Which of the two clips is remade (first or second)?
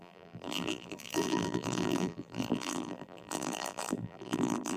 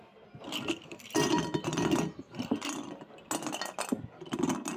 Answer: first